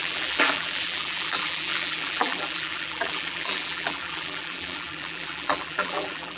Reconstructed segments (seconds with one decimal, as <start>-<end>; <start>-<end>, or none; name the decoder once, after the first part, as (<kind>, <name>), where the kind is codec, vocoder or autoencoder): 0.0-6.4 (vocoder, BigVGAN v2)